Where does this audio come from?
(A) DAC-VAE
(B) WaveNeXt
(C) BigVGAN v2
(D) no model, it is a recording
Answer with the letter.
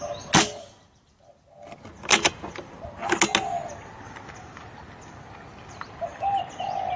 D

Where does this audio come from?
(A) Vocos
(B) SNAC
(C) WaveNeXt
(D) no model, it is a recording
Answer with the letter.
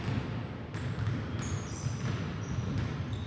D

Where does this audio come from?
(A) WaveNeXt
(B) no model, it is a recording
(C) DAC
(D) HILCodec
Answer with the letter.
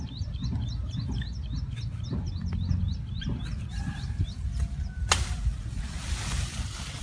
B